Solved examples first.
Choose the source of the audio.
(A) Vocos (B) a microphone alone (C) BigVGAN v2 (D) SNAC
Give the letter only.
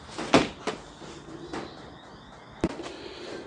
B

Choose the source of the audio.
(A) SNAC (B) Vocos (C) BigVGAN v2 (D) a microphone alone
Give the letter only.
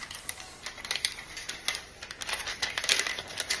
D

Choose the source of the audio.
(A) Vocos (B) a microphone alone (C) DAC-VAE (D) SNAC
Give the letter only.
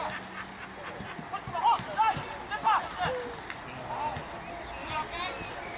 B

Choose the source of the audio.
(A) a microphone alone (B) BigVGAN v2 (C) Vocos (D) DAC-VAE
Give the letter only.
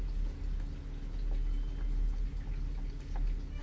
A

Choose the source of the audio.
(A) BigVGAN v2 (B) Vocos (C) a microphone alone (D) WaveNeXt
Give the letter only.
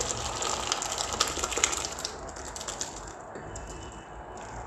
C